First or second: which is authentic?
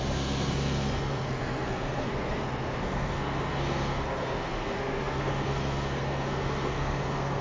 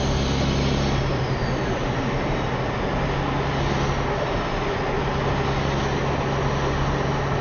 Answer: second